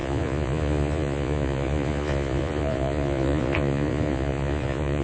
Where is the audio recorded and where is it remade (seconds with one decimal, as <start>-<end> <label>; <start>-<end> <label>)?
0.0-5.0 remade